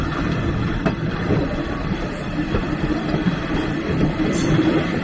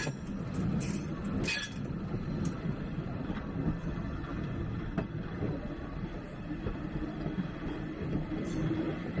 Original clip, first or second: second